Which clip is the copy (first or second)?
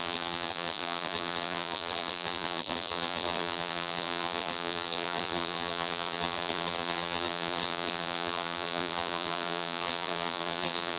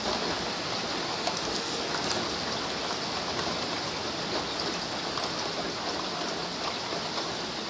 first